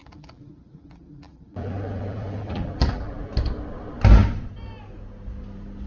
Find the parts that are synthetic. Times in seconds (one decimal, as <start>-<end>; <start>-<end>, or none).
0.0-3.3